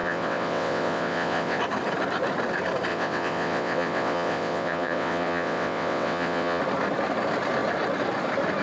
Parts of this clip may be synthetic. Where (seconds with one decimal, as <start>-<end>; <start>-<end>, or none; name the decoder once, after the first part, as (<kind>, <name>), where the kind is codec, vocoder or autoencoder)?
0.0-1.6 (vocoder, WaveNeXt); 2.9-6.6